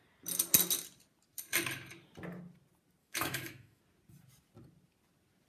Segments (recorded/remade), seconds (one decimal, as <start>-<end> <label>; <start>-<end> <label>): 0.0-3.0 recorded; 3.0-3.8 remade; 3.8-5.5 recorded